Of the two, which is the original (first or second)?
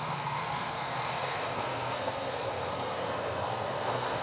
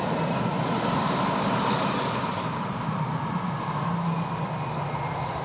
second